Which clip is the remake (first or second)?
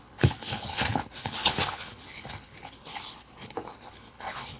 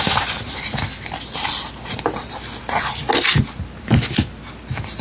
first